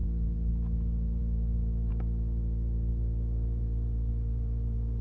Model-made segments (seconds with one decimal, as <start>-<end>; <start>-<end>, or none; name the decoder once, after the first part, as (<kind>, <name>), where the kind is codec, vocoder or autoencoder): none